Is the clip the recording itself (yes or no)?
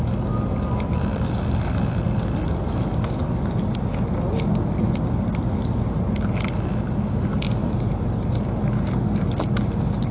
yes